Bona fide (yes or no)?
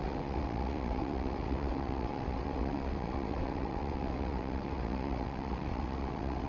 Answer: no